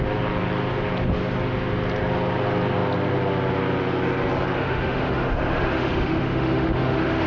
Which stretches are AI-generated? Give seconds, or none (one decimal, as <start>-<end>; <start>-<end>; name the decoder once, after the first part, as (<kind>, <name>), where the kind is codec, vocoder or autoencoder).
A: 4.6-7.3 (autoencoder, DAC-VAE)